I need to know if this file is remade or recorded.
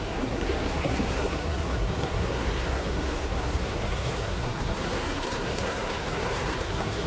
remade